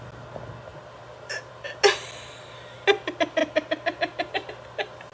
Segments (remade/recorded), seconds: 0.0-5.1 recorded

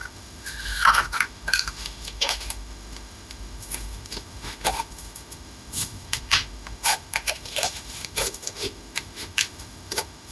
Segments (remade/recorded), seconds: 0.0-10.3 remade

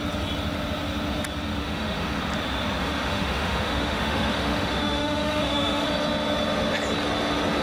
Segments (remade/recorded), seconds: 0.0-1.6 recorded; 1.6-2.2 remade; 2.2-2.8 recorded; 2.8-5.9 remade; 5.9-7.6 recorded

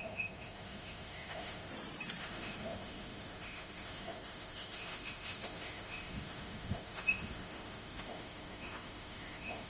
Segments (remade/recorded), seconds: 0.0-1.7 remade; 1.7-2.2 recorded; 2.2-9.7 remade

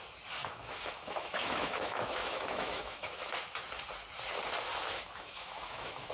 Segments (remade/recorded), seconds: 0.0-0.4 recorded; 0.4-3.3 remade; 3.3-4.8 recorded; 4.8-6.1 remade

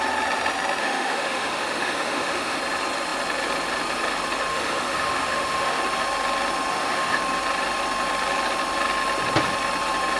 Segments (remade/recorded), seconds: 0.0-0.8 recorded; 0.8-2.6 remade; 2.6-4.5 recorded; 4.5-5.8 remade; 5.8-6.7 recorded; 6.7-7.2 remade; 7.2-10.2 recorded